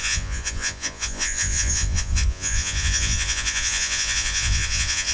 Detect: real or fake fake